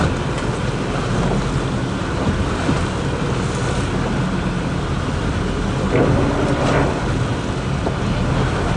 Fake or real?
real